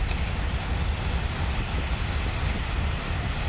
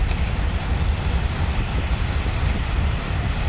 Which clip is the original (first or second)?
first